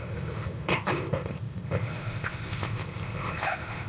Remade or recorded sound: remade